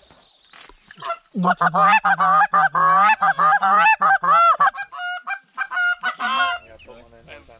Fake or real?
real